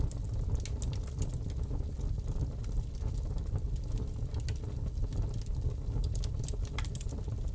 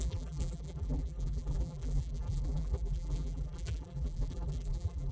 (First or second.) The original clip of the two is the first